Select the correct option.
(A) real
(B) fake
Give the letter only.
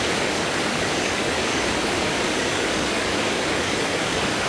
B